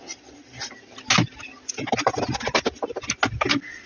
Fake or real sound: real